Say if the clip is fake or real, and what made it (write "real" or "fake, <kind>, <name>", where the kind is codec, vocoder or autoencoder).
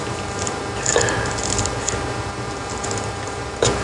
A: fake, vocoder, BigVGAN v2